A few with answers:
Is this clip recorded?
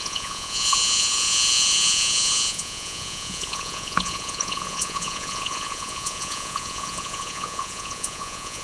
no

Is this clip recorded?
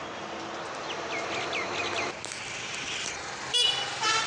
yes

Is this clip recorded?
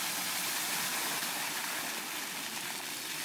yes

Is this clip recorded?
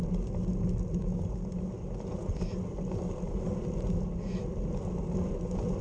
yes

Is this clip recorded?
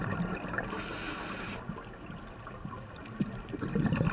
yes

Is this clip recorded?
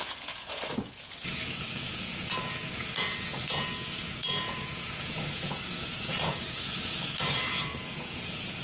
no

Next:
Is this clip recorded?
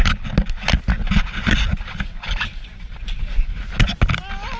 yes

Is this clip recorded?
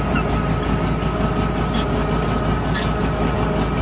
yes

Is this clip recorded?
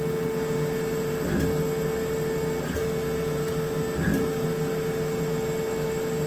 yes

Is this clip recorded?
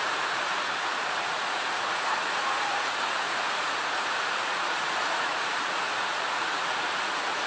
no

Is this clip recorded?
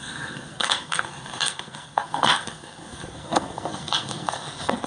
no